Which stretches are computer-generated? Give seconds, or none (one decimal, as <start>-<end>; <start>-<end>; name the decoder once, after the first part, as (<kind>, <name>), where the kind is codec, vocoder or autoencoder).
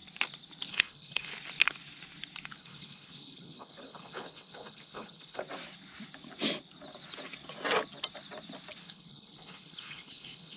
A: 0.7-1.3 (codec, HILCodec); 2.6-5.4; 8.8-10.6